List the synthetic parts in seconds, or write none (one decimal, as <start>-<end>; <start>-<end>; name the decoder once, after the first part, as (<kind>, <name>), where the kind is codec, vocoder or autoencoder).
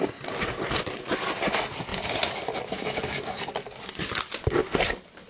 none